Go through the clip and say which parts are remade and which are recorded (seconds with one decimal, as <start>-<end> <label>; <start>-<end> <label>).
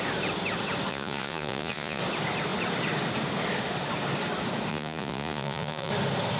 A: 0.0-0.9 recorded; 0.9-2.0 remade; 2.0-4.7 recorded; 4.7-5.9 remade; 5.9-6.4 recorded